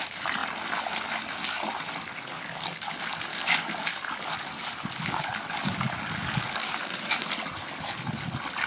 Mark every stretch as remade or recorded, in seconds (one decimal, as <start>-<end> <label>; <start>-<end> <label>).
0.0-2.1 recorded; 2.1-2.9 remade; 2.9-3.3 recorded; 3.3-7.1 remade; 7.1-8.7 recorded